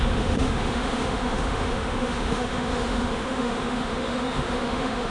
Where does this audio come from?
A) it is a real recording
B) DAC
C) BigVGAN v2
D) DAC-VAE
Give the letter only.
D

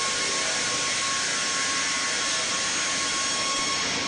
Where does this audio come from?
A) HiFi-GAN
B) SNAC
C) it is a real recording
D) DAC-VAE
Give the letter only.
C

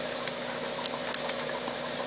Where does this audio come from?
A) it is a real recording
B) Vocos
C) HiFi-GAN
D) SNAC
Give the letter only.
A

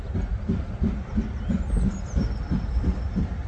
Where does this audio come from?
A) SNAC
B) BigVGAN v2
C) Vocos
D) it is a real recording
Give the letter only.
D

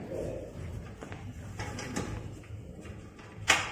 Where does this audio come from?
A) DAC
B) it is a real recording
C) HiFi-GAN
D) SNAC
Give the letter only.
B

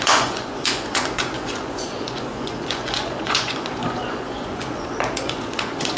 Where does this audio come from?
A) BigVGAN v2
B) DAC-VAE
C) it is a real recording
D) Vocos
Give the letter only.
D